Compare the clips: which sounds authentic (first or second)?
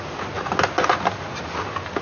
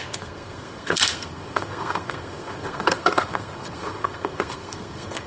first